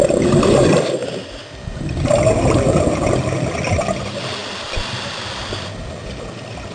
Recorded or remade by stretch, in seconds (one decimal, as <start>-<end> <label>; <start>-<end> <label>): 0.0-4.4 recorded; 4.4-5.4 remade; 5.4-6.7 recorded